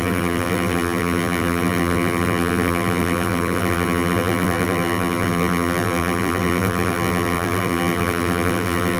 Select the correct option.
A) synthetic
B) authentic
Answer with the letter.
A